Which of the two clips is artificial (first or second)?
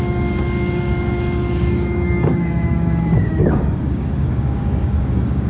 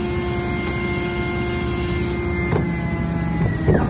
first